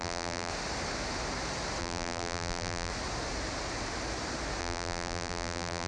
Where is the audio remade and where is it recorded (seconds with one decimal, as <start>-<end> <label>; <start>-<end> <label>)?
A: 0.0-0.5 remade; 0.5-1.8 recorded; 1.8-2.9 remade; 2.9-4.6 recorded; 4.6-5.9 remade